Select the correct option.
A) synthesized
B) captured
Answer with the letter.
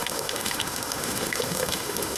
A